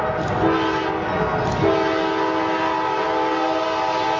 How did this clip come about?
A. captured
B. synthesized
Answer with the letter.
A